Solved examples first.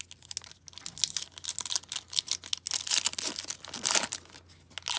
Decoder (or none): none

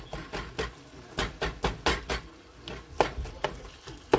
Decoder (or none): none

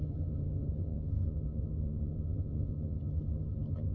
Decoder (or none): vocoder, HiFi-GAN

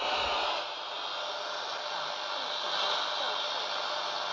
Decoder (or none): none